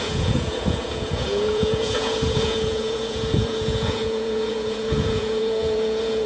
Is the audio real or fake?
fake